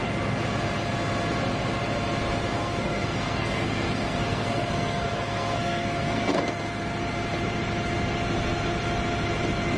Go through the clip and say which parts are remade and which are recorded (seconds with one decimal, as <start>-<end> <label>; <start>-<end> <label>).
0.0-2.5 recorded; 2.5-6.6 remade; 6.6-9.8 recorded